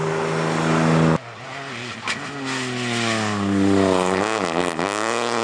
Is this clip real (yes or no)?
yes